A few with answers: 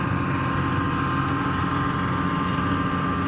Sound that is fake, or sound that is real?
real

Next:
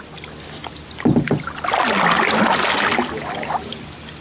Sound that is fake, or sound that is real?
real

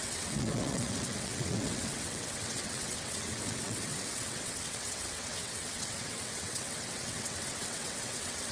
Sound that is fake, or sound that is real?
fake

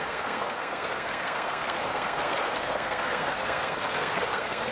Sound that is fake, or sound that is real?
fake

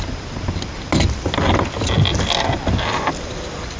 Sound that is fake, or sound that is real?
real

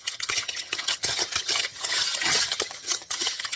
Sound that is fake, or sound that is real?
fake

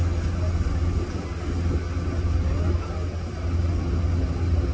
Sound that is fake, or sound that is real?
real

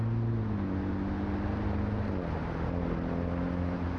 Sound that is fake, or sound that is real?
real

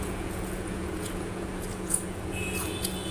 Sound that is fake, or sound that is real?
fake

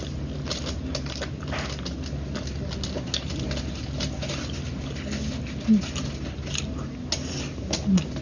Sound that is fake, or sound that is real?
real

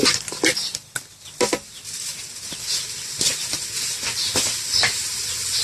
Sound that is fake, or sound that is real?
real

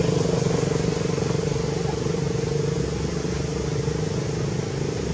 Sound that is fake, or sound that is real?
real